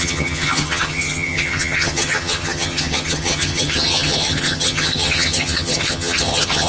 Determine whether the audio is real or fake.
fake